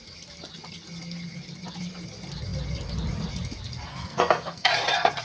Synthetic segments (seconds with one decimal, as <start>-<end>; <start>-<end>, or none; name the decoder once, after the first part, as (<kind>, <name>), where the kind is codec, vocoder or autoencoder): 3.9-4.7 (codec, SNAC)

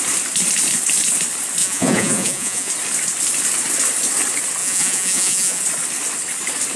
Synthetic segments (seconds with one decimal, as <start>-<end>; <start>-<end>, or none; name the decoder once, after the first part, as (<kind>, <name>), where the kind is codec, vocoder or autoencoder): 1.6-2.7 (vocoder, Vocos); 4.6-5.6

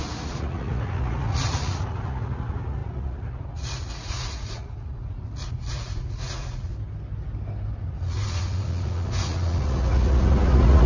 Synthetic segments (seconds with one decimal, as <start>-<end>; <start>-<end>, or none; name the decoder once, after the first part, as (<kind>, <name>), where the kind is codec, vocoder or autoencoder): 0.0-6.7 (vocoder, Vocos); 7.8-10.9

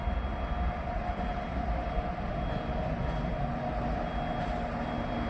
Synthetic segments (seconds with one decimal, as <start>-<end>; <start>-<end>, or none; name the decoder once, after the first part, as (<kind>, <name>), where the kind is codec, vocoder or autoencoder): none

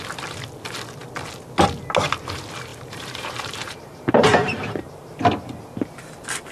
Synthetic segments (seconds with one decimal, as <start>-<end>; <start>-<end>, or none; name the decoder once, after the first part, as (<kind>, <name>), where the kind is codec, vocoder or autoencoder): 2.7-5.2 (vocoder, BigVGAN v2)